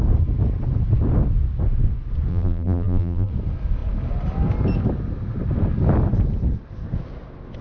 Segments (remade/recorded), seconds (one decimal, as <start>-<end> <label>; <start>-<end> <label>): 0.0-2.3 recorded; 2.3-3.3 remade; 3.3-7.6 recorded